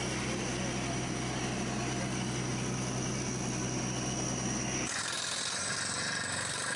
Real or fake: real